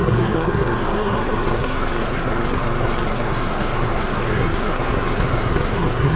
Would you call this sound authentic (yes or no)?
no